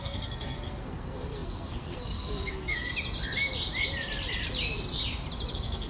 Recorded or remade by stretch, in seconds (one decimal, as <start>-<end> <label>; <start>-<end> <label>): 0.0-2.9 remade; 2.9-5.5 recorded; 5.5-5.9 remade